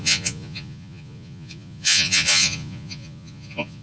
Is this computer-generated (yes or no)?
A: yes